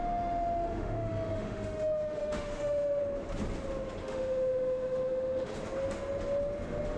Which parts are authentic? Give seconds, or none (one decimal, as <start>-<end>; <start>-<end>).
3.0-4.0; 5.5-7.0